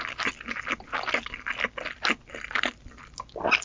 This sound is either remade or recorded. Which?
recorded